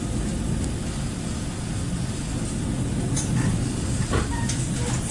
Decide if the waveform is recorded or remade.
recorded